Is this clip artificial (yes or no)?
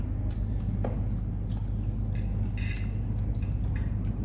no